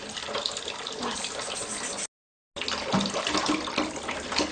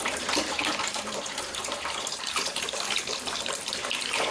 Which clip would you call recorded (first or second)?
first